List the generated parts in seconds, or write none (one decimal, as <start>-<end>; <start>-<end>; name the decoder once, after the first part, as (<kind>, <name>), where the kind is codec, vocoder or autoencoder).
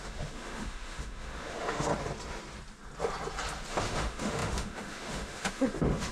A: 0.0-1.9 (autoencoder, DAC-VAE); 3.7-6.1